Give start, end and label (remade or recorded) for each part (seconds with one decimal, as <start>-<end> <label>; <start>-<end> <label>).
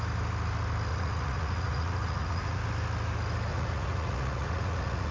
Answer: 0.0-0.9 recorded; 0.9-2.6 remade; 2.6-3.5 recorded; 3.5-5.1 remade